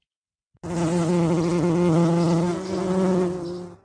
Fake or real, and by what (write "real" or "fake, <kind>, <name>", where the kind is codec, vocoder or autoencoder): real